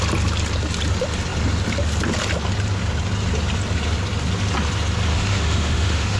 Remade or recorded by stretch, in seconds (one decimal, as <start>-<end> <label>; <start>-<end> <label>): 0.0-5.1 recorded; 5.1-6.2 remade